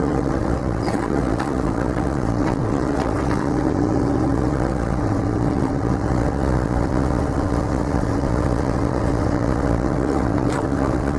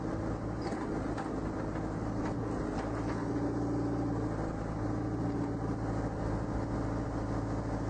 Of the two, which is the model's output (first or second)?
first